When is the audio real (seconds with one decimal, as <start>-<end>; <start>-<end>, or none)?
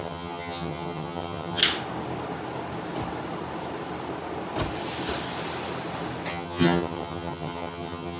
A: 1.6-6.3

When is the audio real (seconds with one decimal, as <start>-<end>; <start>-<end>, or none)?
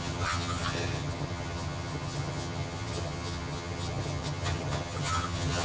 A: none